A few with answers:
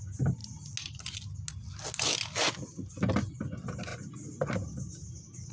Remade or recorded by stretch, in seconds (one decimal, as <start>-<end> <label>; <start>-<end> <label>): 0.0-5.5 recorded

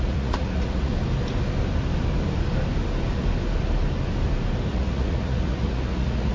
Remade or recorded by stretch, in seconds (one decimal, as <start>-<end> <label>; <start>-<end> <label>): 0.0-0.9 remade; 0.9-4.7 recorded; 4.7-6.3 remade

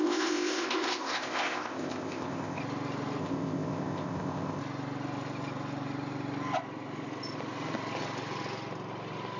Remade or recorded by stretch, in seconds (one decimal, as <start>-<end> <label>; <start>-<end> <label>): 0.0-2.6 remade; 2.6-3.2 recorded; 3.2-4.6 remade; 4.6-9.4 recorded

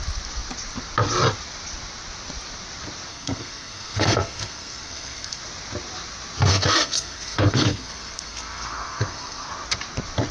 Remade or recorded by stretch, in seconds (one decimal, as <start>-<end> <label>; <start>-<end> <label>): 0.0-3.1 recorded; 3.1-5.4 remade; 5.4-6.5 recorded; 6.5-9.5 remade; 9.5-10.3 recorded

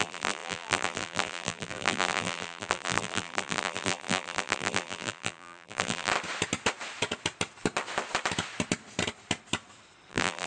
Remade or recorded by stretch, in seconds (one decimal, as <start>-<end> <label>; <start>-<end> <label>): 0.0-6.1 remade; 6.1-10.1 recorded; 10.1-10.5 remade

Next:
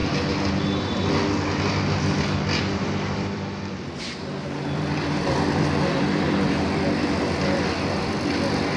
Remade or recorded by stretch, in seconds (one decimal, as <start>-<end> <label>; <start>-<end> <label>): 0.0-2.2 recorded; 2.2-8.8 remade

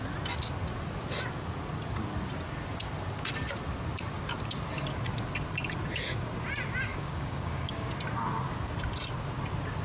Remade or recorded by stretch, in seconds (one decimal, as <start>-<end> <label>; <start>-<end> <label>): 0.0-6.9 recorded; 6.9-7.9 remade; 7.9-9.8 recorded